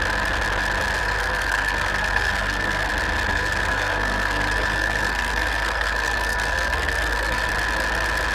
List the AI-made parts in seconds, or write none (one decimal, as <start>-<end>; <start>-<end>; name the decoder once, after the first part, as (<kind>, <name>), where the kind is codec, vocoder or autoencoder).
1.0-2.9 (codec, SNAC); 3.3-7.5